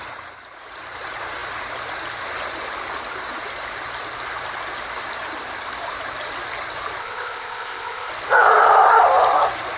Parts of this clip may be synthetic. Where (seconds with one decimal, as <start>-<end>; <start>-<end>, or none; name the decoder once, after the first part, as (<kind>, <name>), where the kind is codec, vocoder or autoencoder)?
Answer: 7.0-8.1 (codec, ZipCodec)